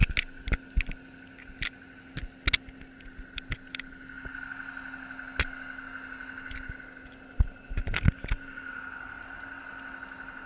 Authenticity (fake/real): real